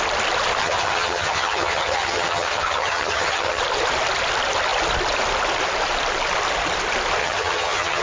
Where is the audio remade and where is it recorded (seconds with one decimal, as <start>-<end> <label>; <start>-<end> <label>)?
0.0-0.6 recorded; 0.6-3.6 remade; 3.6-7.2 recorded; 7.2-8.0 remade